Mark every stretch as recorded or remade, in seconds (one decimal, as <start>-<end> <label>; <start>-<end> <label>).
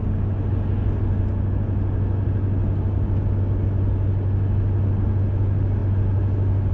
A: 0.0-6.7 recorded